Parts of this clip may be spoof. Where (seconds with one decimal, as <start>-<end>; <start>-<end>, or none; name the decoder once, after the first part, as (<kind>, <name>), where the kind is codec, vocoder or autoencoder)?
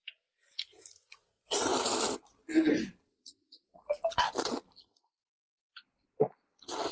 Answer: none